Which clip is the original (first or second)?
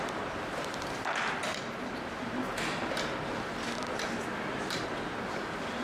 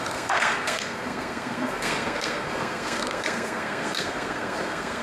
first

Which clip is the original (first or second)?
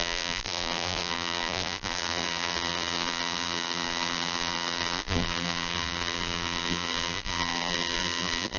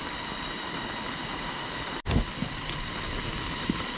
second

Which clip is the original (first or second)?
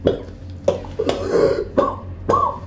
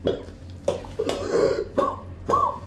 first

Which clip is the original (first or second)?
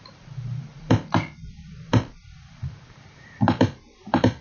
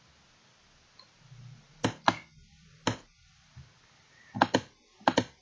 second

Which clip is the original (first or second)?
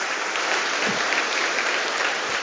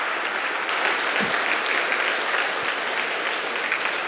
second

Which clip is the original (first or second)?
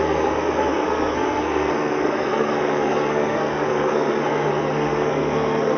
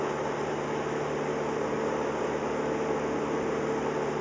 second